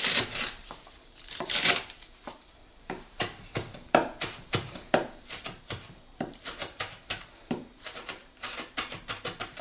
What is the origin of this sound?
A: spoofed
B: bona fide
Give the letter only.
A